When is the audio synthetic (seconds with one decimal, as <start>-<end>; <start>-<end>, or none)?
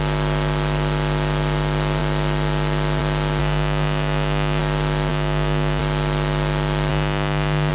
3.4-4.6; 5.1-5.8; 6.9-7.7